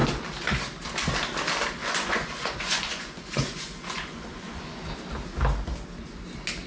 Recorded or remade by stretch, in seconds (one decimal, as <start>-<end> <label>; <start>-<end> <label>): 0.0-1.8 recorded; 1.8-4.9 remade; 4.9-6.7 recorded